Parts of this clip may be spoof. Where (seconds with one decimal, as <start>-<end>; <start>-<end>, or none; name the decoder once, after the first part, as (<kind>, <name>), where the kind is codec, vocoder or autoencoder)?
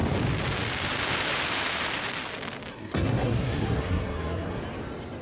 2.7-4.6 (codec, SNAC)